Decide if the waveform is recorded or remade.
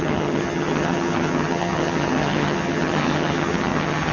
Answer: remade